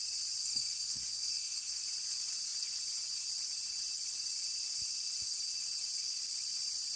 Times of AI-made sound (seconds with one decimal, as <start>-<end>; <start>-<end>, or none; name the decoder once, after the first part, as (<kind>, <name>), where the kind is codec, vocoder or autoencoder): 0.4-1.8 (codec, SNAC)